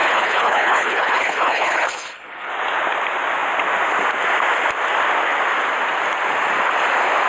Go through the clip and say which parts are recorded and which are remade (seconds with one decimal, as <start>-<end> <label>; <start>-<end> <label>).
0.0-2.5 remade; 2.5-7.3 recorded